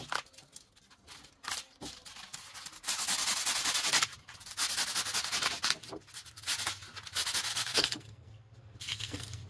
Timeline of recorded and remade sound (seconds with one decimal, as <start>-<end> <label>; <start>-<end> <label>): 0.0-7.5 recorded; 7.5-9.5 remade